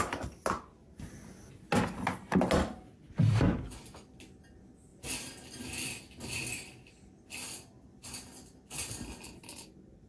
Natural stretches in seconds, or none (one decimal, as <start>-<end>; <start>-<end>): 0.0-10.1